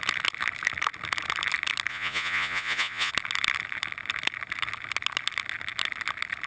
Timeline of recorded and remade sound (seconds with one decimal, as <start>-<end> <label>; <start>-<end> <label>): 0.0-1.9 recorded; 1.9-3.1 remade; 3.1-6.5 recorded